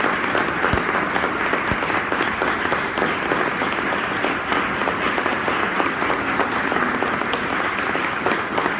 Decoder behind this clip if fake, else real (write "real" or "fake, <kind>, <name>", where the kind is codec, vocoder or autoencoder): real